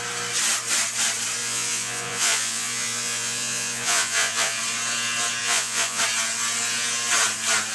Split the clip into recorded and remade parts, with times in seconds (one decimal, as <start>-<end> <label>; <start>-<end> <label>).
0.0-1.4 recorded; 1.4-4.6 remade; 4.6-5.4 recorded; 5.4-6.0 remade; 6.0-7.7 recorded